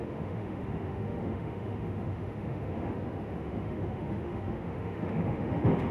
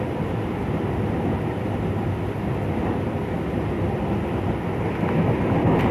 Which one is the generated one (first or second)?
first